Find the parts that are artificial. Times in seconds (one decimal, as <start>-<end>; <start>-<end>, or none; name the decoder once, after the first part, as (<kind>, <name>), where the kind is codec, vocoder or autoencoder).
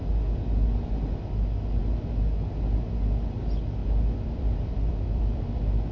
3.8-5.4 (vocoder, BigVGAN v2)